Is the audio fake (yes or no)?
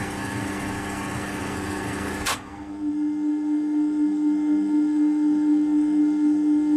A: yes